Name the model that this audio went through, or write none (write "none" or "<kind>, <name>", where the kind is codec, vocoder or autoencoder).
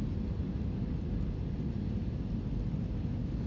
none